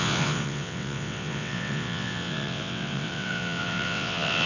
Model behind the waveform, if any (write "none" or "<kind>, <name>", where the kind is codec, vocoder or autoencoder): vocoder, WaveNeXt